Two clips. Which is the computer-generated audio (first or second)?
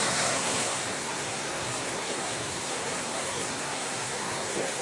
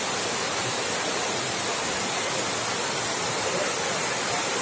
first